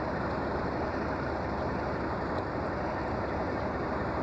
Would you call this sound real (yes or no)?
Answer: yes